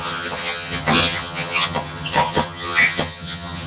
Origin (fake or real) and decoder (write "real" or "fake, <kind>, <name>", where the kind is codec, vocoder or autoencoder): fake, vocoder, HiFi-GAN